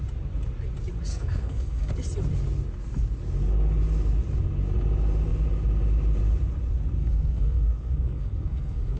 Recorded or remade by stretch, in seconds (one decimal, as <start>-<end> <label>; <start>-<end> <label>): 0.0-1.1 recorded; 1.1-1.9 remade; 1.9-7.0 recorded; 7.0-9.0 remade